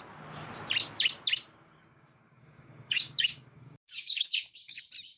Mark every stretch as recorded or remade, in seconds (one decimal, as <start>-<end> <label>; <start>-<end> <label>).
0.0-1.7 recorded; 1.7-4.8 remade; 4.8-5.2 recorded